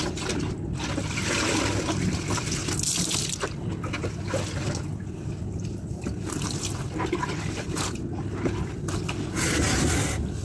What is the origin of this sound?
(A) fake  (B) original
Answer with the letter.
B